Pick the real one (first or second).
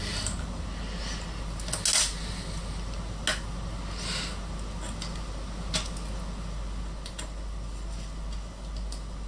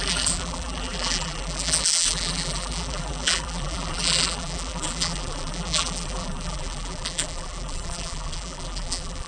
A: first